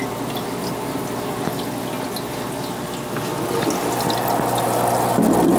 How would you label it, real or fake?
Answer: real